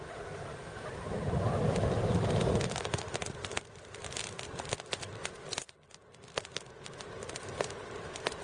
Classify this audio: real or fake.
real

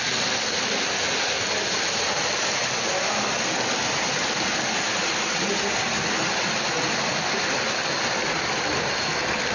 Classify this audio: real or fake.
real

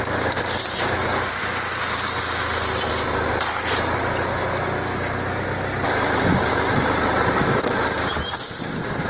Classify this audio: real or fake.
real